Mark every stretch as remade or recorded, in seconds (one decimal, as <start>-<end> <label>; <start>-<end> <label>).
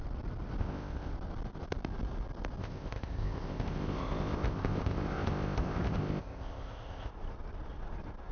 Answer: 0.0-0.6 recorded; 0.6-1.1 remade; 1.1-2.6 recorded; 2.6-7.1 remade; 7.1-8.3 recorded